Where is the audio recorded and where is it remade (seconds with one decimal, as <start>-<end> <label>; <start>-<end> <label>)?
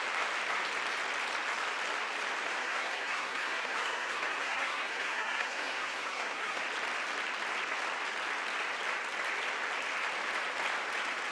0.0-2.6 recorded; 2.6-6.6 remade; 6.6-11.3 recorded